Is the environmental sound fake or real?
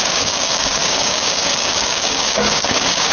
fake